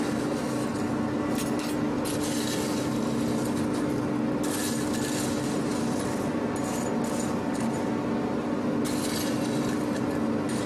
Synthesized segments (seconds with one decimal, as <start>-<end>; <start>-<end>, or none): none